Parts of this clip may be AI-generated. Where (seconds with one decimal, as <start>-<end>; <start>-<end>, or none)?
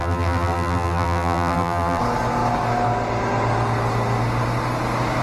0.0-2.0